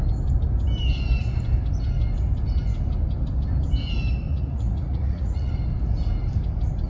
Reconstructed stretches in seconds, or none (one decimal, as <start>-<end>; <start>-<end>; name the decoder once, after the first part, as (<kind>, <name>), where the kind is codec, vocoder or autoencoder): 4.3-5.5 (vocoder, Vocos)